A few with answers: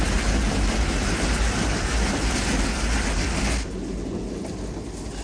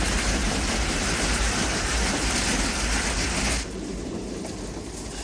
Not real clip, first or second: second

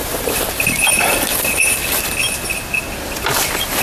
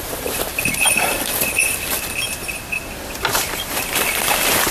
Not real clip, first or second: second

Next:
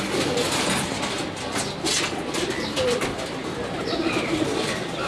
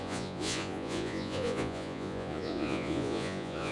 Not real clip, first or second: second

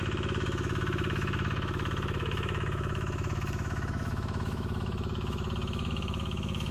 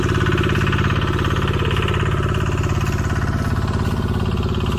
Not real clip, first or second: first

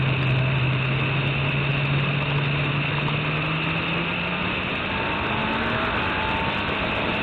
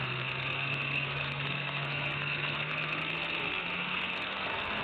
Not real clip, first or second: second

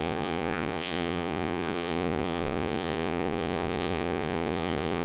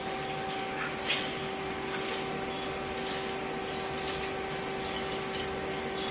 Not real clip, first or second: first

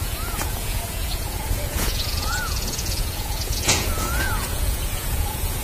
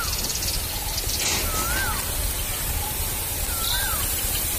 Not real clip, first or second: first